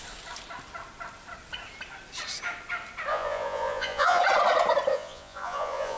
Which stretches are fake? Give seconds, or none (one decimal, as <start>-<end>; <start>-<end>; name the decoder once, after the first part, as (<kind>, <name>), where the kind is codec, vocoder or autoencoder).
3.1-4.2 (vocoder, Vocos); 4.9-6.0